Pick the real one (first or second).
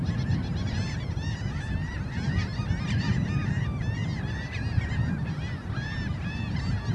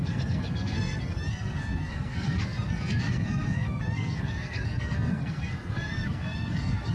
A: first